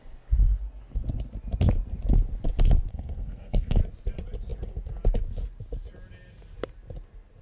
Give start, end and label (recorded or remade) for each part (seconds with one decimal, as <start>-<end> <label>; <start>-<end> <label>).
0.0-2.9 recorded; 2.9-3.8 remade; 3.8-7.4 recorded